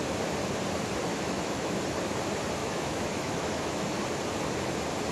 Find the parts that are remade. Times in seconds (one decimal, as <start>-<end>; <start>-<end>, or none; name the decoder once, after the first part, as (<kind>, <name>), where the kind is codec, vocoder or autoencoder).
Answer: 1.1-1.8 (autoencoder, DAC-VAE); 2.6-4.0